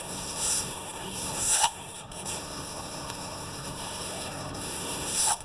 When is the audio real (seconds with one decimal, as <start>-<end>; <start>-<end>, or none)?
none